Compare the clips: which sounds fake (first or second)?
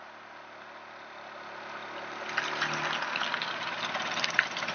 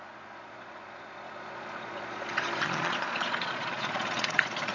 second